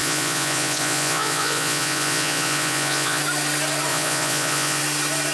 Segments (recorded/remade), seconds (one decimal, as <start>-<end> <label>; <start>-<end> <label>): 0.0-3.2 remade; 3.2-3.9 recorded; 3.9-4.8 remade; 4.8-5.3 recorded